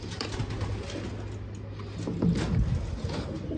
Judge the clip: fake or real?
real